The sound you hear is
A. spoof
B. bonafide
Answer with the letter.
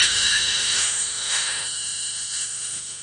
A